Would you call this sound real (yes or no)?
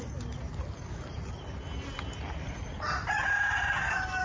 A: yes